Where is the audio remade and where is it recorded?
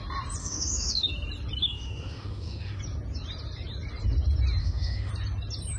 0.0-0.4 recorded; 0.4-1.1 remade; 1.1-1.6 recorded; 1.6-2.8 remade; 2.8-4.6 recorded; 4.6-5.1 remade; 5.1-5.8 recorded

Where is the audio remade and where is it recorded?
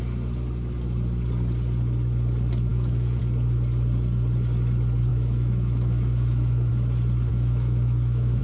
0.0-2.7 recorded; 2.7-3.2 remade; 3.2-5.1 recorded; 5.1-6.7 remade; 6.7-7.3 recorded; 7.3-8.4 remade